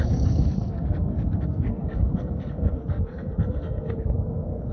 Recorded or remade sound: remade